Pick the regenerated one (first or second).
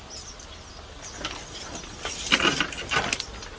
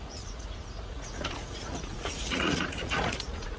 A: second